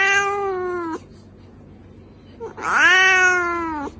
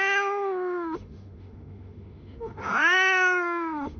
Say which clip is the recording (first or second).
first